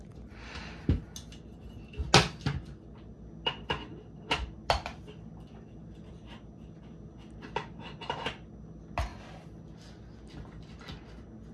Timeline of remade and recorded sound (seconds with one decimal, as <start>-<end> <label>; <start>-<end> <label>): 0.0-11.5 recorded